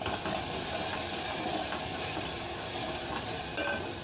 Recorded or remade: recorded